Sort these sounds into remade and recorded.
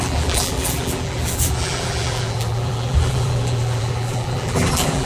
remade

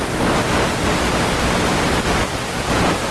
recorded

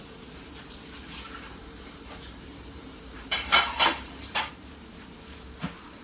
remade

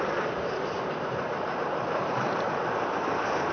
remade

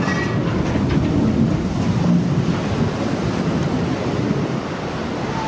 recorded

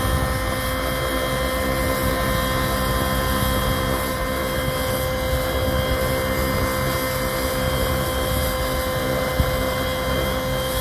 recorded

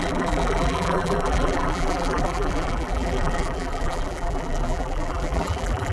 remade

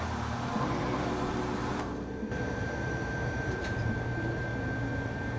remade